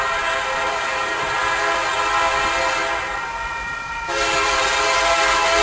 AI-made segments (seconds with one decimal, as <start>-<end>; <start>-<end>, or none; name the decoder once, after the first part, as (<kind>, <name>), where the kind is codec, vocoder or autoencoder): 0.0-1.4 (vocoder, BigVGAN v2); 3.5-5.6